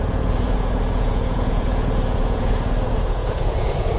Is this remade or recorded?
remade